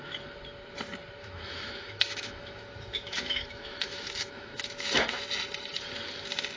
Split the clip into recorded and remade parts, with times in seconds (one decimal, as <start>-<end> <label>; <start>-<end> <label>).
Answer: 0.0-1.2 recorded; 1.2-5.2 remade; 5.2-6.6 recorded